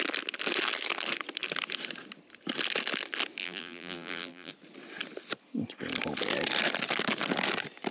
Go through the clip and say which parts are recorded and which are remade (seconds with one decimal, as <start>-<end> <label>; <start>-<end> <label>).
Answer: 0.0-3.4 recorded; 3.4-4.5 remade; 4.5-7.9 recorded